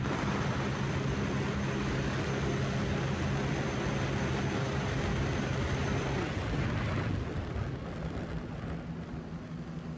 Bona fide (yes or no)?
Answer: yes